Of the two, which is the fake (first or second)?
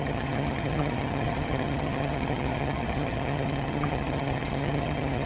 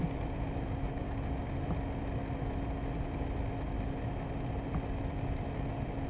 first